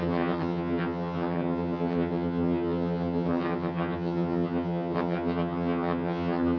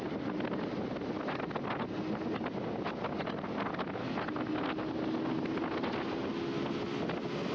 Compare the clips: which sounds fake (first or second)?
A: first